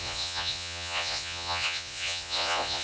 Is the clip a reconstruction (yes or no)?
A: yes